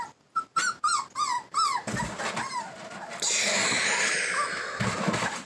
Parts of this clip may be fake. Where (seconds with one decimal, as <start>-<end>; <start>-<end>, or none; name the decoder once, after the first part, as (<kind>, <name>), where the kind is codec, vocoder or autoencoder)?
0.0-1.3 (vocoder, BigVGAN v2); 3.4-3.8; 4.5-5.5